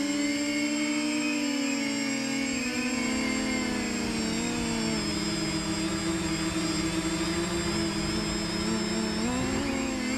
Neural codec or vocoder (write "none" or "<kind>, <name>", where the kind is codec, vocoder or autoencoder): none